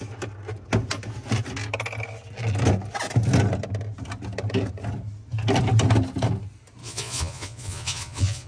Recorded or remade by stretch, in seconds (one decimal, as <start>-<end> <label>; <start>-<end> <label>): 0.0-6.8 recorded; 6.8-8.5 remade